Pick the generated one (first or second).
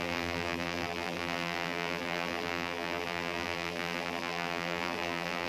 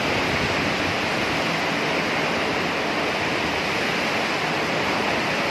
first